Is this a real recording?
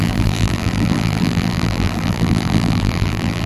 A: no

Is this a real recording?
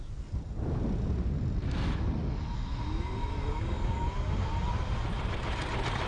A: yes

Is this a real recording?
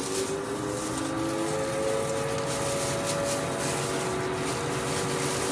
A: yes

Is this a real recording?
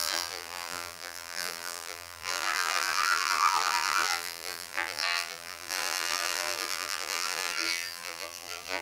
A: no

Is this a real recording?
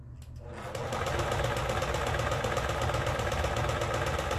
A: yes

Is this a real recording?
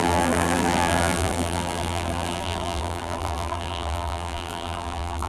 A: no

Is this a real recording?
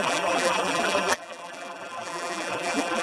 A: no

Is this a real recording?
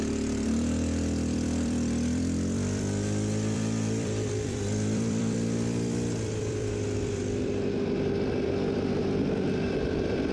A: no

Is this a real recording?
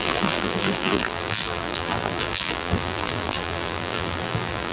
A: no